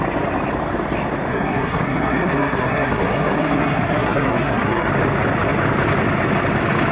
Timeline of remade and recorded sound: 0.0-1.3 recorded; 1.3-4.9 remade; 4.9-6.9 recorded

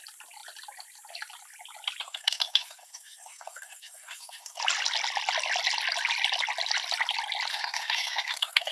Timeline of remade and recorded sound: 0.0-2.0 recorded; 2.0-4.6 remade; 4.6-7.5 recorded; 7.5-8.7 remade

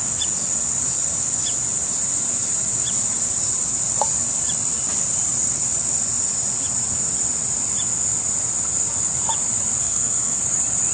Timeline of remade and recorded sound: 0.0-9.8 recorded; 9.8-10.4 remade; 10.4-10.9 recorded

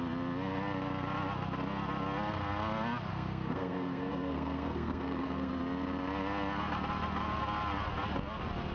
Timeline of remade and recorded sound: 0.0-3.1 recorded; 3.1-5.5 remade; 5.5-8.7 recorded